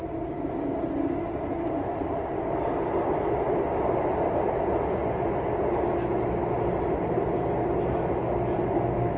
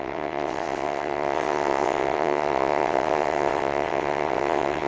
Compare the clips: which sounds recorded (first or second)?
first